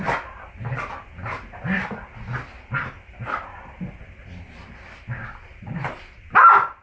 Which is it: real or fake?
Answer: real